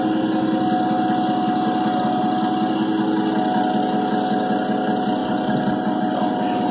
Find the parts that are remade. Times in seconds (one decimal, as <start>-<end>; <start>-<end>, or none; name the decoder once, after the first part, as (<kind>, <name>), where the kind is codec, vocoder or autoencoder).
none